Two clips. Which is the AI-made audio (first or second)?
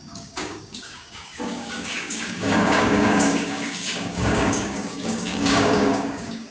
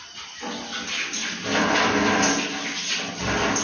first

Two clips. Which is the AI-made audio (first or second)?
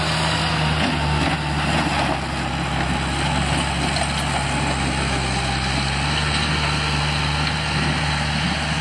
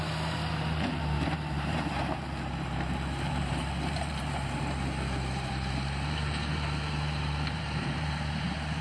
second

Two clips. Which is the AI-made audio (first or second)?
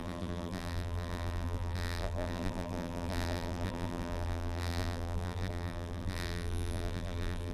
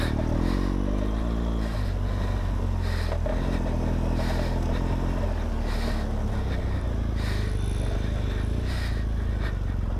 first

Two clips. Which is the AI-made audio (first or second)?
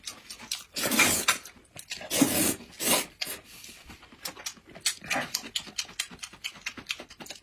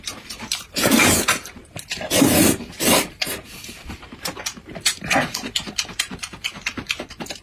second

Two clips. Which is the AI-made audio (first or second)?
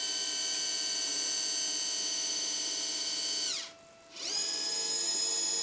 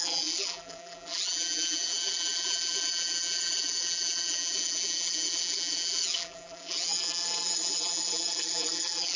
second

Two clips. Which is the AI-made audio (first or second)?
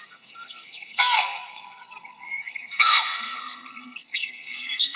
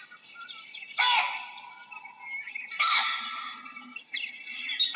first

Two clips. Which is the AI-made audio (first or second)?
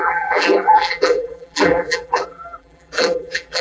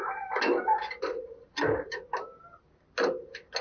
first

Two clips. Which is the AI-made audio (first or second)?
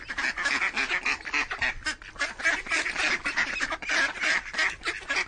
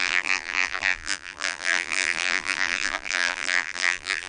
second